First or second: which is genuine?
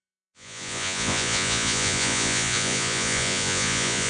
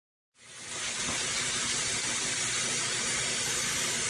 second